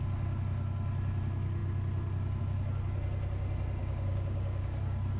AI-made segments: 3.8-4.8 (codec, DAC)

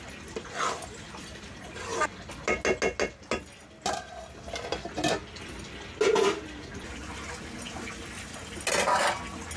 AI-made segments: none

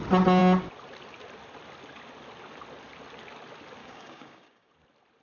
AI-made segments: 3.8-4.7 (codec, DAC)

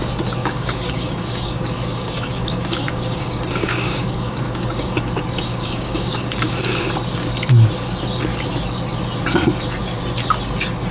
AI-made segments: 0.4-5.1 (codec, DAC); 5.5-6.6

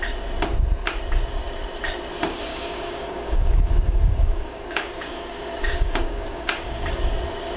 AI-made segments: 2.5-7.1 (codec, DAC)

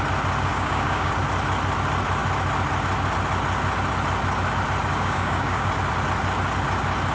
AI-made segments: 0.5-1.1 (codec, DAC); 4.9-5.7

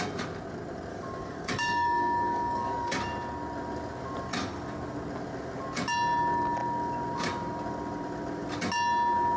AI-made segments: 0.9-3.0 (codec, DAC)

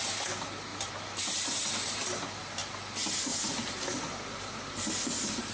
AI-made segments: none